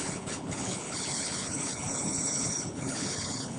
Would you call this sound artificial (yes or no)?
yes